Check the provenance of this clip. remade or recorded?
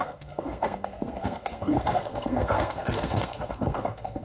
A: remade